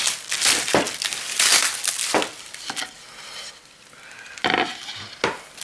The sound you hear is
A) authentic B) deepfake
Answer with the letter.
A